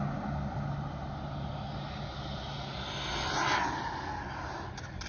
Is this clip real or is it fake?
real